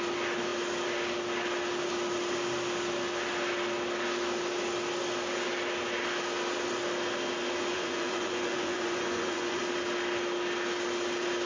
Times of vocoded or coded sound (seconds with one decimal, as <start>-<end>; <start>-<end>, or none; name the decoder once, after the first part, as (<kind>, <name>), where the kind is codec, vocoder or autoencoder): 7.7-9.6 (vocoder, Vocos)